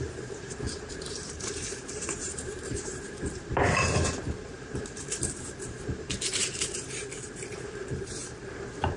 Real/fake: fake